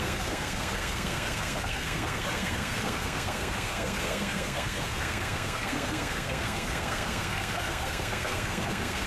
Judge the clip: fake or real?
fake